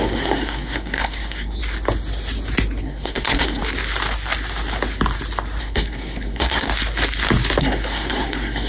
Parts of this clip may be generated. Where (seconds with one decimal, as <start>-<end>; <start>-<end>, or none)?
0.0-1.6; 2.8-3.6; 5.6-6.7; 7.6-8.7